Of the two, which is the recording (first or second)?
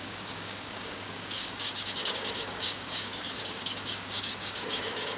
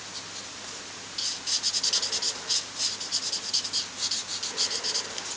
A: second